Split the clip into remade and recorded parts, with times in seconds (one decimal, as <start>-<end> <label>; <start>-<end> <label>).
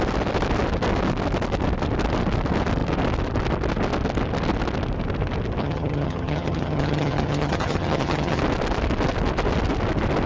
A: 0.0-5.6 recorded; 5.6-8.4 remade; 8.4-10.3 recorded